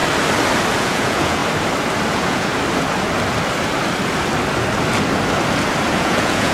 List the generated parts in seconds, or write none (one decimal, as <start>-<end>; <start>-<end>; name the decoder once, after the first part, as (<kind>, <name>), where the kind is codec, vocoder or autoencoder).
0.8-1.4 (vocoder, Vocos); 2.1-2.5; 5.9-6.5